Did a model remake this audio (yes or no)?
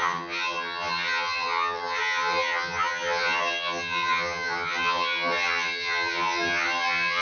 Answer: yes